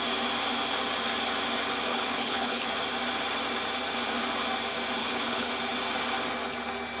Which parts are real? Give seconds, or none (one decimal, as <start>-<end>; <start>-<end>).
0.0-1.9; 2.7-5.0; 5.5-7.0